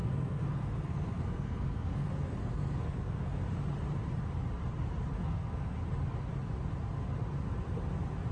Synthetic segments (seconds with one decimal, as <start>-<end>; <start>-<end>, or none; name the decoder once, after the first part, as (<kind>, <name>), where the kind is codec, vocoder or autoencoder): 0.0-3.4 (codec, SNAC); 5.2-5.8